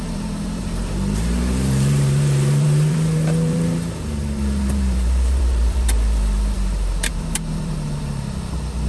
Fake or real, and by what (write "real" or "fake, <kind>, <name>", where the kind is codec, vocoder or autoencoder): fake, vocoder, BigVGAN v2